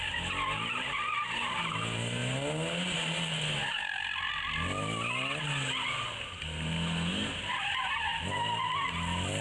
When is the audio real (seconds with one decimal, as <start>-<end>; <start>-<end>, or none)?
0.0-9.4